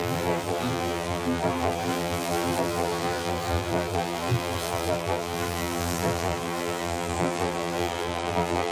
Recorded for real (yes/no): no